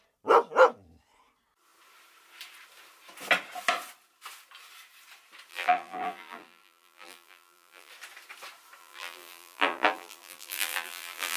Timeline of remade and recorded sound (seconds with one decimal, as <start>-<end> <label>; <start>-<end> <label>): 0.0-5.5 recorded; 5.5-7.9 remade; 7.9-8.8 recorded; 8.8-11.4 remade